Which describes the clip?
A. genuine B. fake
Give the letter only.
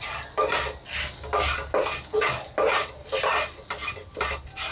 A